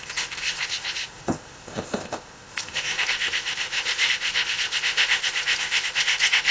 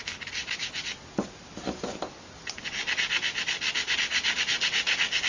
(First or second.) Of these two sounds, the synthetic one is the first